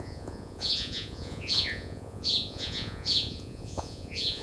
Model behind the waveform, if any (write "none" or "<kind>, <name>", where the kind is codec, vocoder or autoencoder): vocoder, Vocos